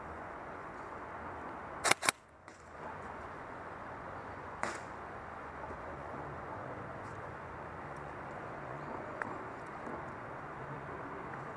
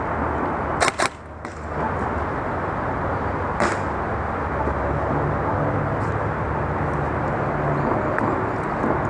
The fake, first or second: first